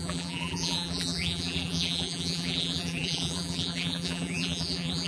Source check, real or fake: fake